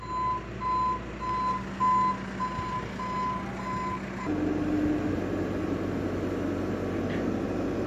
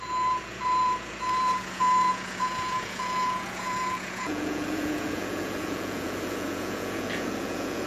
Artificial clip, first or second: second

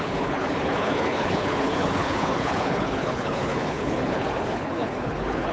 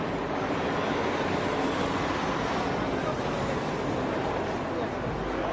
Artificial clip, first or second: first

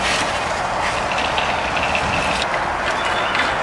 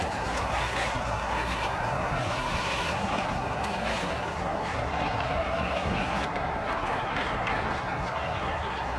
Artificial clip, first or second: second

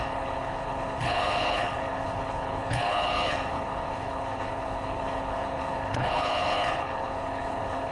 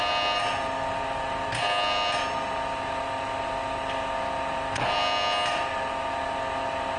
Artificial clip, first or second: first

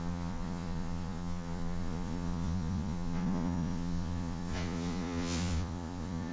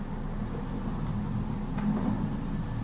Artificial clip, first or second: first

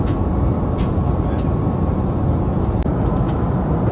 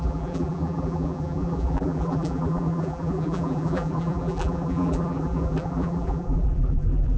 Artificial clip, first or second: second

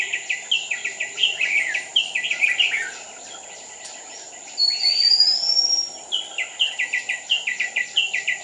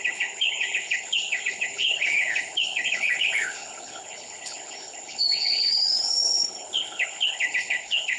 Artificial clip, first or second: second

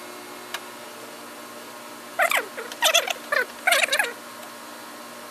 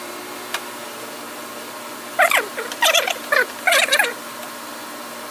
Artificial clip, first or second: second